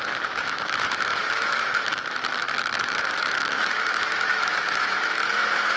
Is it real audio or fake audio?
fake